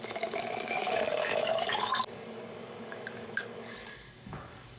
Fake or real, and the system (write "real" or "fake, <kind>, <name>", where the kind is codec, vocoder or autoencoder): fake, codec, DAC